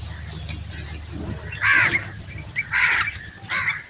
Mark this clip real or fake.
real